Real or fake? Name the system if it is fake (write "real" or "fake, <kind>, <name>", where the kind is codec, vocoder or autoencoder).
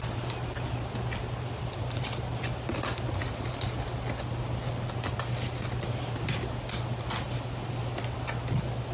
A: real